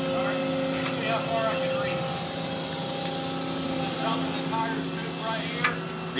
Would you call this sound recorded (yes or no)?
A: yes